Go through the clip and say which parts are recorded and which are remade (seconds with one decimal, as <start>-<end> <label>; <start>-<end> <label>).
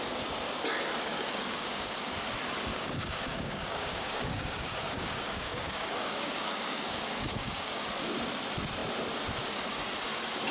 0.0-1.1 recorded; 1.1-1.9 remade; 1.9-2.7 recorded; 2.7-7.9 remade; 7.9-10.5 recorded